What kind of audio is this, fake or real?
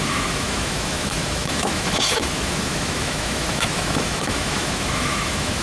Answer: fake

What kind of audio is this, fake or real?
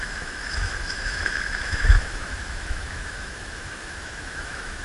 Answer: fake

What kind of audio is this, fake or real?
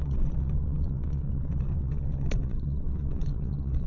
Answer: fake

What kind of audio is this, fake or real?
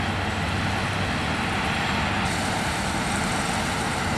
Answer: real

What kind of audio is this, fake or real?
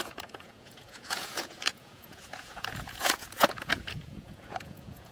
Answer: fake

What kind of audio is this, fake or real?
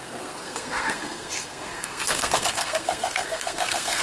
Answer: fake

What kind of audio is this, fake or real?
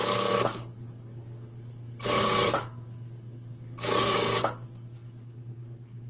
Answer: fake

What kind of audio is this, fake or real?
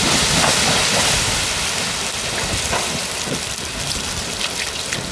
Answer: real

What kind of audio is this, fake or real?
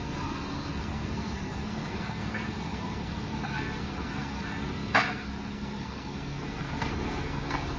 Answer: fake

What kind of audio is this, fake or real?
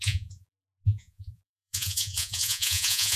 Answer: fake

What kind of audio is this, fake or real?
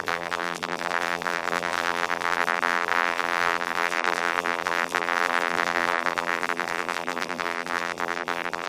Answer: fake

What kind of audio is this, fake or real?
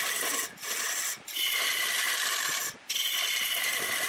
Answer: real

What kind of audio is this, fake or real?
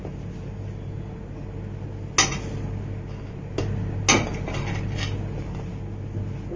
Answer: real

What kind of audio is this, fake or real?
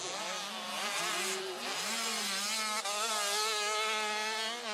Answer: real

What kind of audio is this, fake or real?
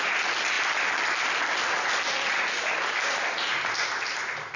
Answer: real